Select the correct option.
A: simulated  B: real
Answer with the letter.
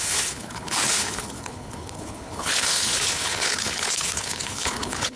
A